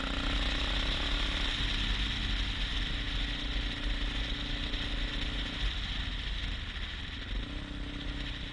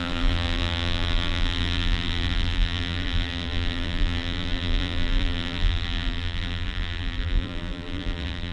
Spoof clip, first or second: second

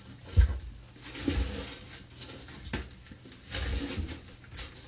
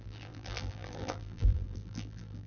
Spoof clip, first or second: second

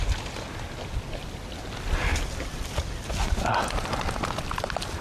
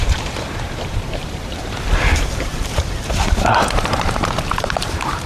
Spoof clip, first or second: second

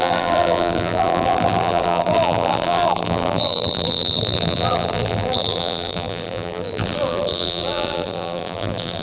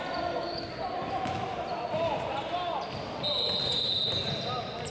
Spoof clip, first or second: first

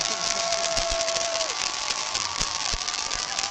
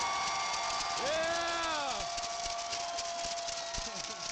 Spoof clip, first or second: first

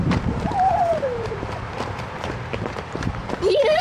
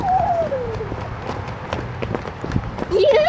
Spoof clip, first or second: first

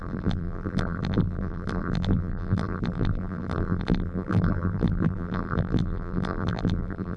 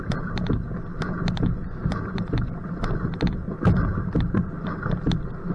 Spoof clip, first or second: first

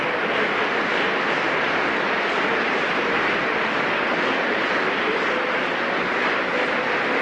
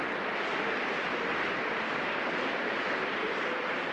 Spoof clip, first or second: second